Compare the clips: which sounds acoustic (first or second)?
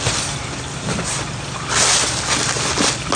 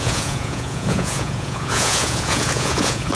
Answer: first